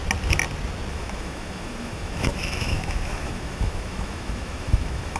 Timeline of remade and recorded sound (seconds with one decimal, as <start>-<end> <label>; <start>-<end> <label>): 0.0-0.9 recorded; 0.9-5.2 remade